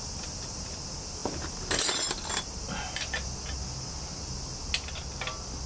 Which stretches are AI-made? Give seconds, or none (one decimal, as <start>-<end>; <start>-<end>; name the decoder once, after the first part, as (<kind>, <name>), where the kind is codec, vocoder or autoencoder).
none